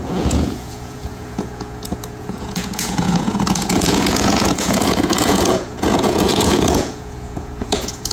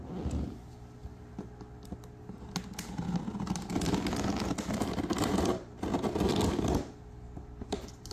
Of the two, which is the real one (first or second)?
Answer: second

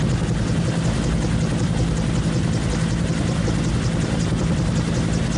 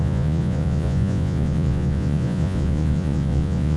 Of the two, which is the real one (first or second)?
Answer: first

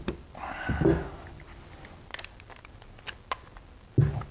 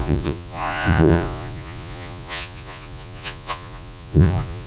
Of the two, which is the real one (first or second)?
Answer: first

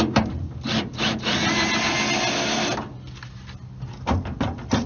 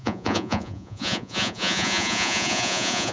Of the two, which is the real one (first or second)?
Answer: first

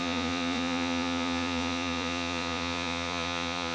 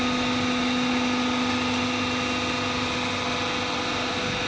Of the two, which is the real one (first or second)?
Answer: second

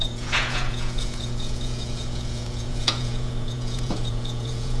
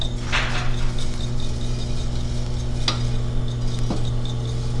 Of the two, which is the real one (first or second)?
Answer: second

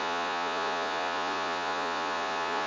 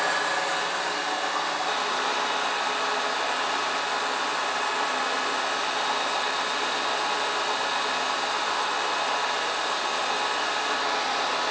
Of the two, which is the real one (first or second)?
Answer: second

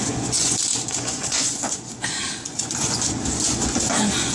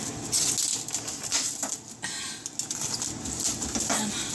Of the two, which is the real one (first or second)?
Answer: second